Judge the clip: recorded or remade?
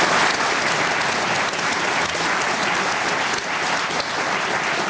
recorded